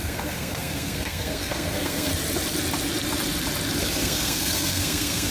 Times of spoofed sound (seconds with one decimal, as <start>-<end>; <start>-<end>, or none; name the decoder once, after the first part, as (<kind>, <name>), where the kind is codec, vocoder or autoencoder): 0.0-2.1 (codec, SNAC); 3.8-5.3